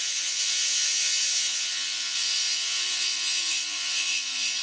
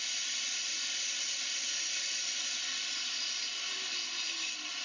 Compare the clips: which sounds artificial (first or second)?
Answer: first